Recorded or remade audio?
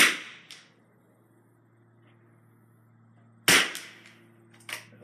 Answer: recorded